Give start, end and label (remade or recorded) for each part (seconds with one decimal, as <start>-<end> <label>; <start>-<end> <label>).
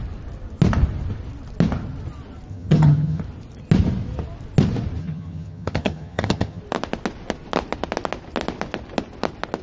0.0-2.5 recorded; 2.5-3.2 remade; 3.2-5.0 recorded; 5.0-6.6 remade; 6.6-9.6 recorded